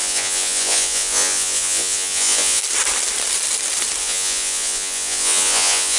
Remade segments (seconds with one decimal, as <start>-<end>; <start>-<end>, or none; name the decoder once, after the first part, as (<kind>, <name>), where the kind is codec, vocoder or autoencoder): 0.0-2.6 (vocoder, Vocos); 4.0-6.0